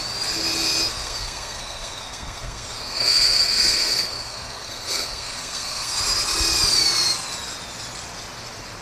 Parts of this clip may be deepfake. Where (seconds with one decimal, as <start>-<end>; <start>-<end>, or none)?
0.9-6.0